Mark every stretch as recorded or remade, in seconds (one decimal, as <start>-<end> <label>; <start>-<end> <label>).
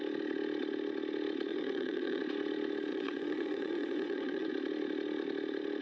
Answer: 0.0-1.5 recorded; 1.5-2.2 remade; 2.2-2.9 recorded; 2.9-4.5 remade; 4.5-5.8 recorded